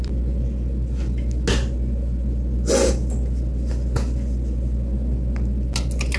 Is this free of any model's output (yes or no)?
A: yes